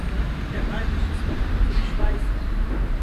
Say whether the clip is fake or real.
fake